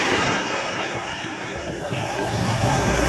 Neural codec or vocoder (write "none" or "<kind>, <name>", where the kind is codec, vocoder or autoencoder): codec, SNAC